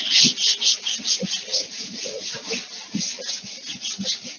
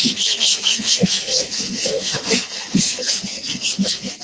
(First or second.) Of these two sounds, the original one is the first